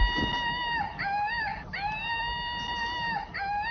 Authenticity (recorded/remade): recorded